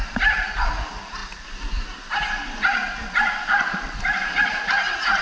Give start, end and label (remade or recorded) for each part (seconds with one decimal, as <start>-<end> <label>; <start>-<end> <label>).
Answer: 0.0-5.2 recorded